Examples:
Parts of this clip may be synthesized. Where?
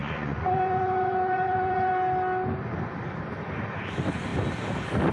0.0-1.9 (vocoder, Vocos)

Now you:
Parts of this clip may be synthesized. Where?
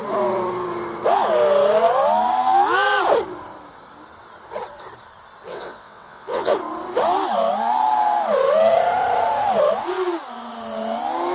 5.5-6.5 (vocoder, WaveNeXt)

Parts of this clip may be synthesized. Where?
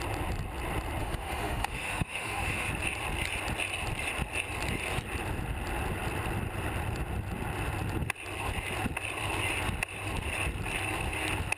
1.0-2.7 (autoencoder, DAC-VAE)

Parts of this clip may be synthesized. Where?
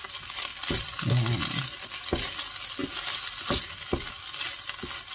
0.5-1.1 (vocoder, BigVGAN v2)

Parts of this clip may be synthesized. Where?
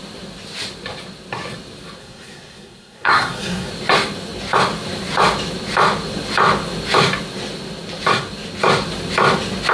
2.0-3.7 (codec, SNAC)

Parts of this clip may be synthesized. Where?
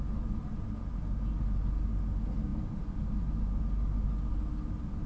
none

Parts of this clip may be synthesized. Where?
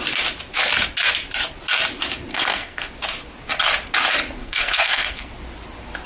2.3-2.9 (codec, SNAC); 4.4-5.3